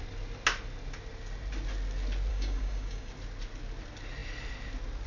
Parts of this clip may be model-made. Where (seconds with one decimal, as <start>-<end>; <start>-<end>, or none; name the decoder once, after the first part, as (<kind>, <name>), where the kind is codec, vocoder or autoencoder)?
2.3-3.1 (codec, DAC)